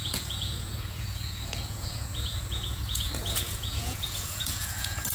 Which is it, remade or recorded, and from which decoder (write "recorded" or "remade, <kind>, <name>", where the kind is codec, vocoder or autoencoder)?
remade, vocoder, Vocos